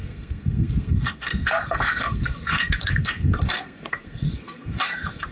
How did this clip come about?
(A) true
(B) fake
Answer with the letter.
B